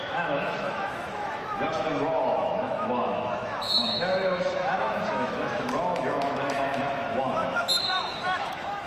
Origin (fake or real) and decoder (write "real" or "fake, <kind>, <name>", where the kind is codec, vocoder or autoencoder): fake, autoencoder, DAC-VAE